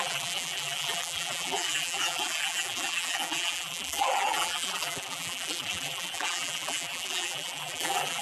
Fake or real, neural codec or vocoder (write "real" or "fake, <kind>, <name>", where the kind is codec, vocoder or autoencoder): fake, vocoder, BigVGAN v2